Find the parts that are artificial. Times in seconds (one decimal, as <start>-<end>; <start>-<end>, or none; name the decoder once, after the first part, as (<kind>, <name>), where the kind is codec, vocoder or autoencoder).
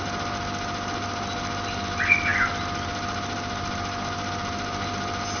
none